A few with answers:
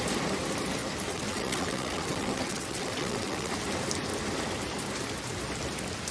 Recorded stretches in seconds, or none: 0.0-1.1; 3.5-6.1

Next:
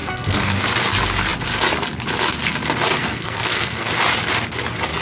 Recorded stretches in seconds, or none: 0.6-3.0; 3.9-5.0

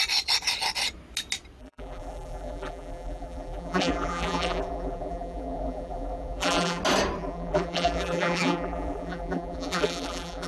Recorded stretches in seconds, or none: 0.0-1.6; 6.8-7.2